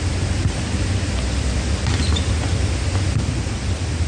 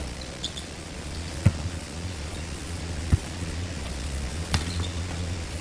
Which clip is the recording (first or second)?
first